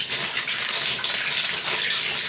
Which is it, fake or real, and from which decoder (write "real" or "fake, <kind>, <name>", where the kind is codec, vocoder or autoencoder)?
real